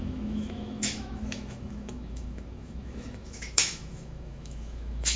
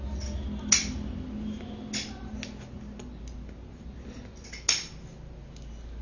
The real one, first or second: second